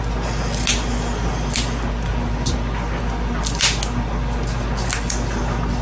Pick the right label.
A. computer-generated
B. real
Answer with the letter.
B